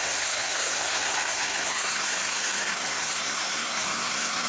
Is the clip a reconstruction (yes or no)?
yes